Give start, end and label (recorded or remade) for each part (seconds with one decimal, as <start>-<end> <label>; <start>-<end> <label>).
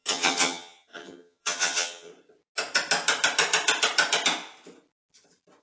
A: 0.0-2.1 remade; 2.1-5.6 recorded